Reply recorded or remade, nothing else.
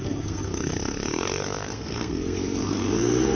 remade